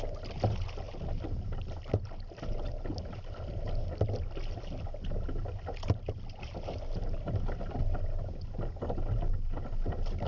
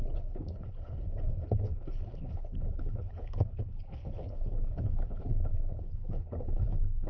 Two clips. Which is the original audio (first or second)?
first